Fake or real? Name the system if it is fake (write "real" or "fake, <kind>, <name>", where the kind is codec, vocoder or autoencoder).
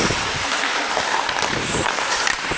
real